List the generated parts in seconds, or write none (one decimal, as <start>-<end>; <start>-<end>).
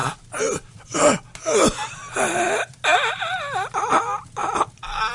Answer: none